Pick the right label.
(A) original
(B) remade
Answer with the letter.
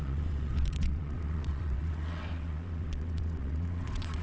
B